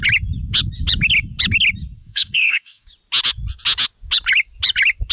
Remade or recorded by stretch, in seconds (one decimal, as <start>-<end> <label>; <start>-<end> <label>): 0.0-2.0 recorded; 2.0-2.9 remade; 2.9-5.1 recorded